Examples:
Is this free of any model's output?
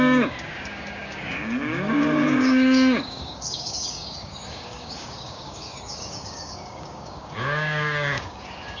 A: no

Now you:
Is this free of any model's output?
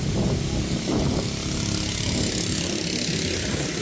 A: yes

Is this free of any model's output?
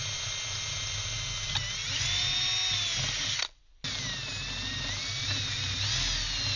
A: yes